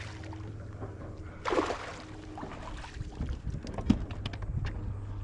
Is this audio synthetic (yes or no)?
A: no